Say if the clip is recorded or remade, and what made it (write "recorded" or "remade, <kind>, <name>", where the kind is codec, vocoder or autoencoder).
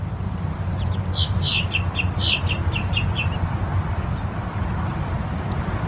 recorded